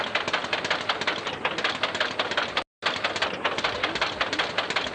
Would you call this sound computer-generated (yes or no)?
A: no